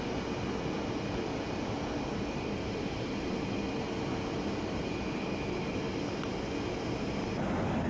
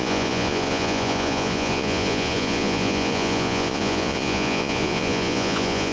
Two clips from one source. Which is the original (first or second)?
first